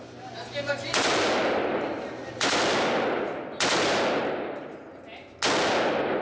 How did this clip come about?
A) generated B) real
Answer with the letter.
B